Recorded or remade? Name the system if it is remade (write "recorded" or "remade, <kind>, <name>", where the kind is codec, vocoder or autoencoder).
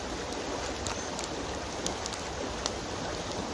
recorded